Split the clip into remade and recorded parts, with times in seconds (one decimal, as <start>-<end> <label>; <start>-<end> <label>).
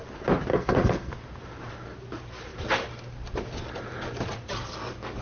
0.0-0.5 recorded; 0.5-1.1 remade; 1.1-5.2 recorded